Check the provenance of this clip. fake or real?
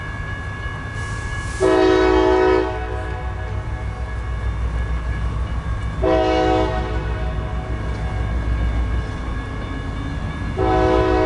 real